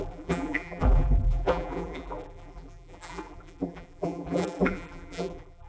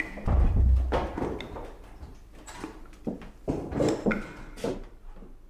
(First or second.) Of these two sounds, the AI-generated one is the first